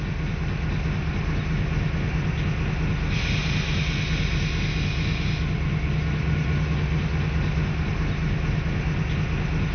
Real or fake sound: real